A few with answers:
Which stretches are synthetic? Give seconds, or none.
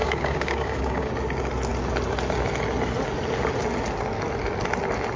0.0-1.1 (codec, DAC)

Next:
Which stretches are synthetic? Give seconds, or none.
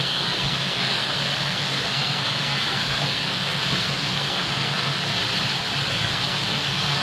0.0-5.2 (codec, SNAC); 5.9-7.0